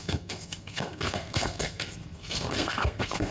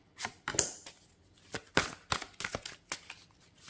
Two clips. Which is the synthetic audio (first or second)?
first